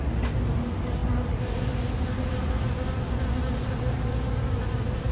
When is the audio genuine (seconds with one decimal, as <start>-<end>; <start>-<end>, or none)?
0.0-5.1